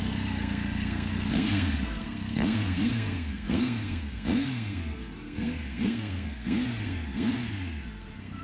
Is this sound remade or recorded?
remade